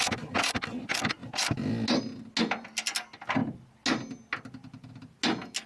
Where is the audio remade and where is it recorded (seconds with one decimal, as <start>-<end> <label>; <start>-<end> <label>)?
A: 0.0-5.7 recorded